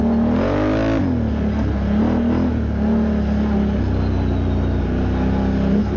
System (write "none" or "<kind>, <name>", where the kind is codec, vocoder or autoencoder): none